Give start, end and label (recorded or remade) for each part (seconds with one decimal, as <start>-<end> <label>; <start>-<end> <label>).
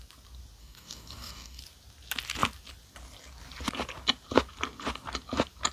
0.0-0.6 recorded; 0.6-1.6 remade; 1.6-5.7 recorded